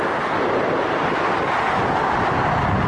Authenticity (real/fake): real